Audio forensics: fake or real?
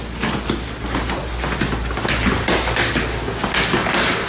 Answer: real